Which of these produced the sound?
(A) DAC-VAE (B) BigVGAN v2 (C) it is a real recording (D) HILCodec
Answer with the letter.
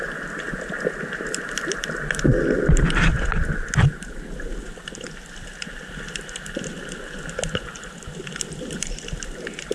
C